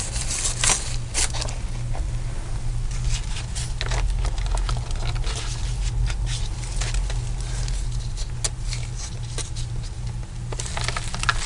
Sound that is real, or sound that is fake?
real